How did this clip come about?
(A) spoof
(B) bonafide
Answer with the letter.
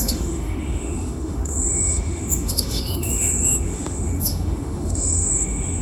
A